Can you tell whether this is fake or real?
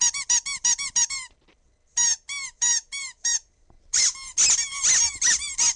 real